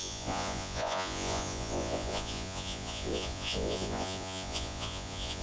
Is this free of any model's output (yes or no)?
no